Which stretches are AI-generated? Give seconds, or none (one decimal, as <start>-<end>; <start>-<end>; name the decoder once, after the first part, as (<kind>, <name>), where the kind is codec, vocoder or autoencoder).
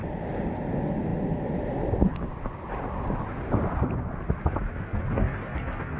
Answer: none